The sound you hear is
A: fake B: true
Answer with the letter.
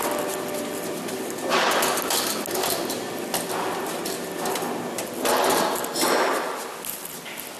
B